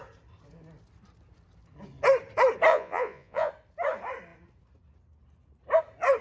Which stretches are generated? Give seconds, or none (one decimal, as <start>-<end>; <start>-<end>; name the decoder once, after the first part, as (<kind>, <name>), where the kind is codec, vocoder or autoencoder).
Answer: 2.7-3.5 (vocoder, Vocos)